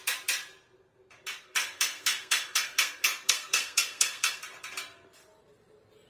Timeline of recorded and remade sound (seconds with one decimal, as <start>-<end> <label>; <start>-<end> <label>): 0.0-1.4 recorded; 1.4-4.4 remade; 4.4-6.1 recorded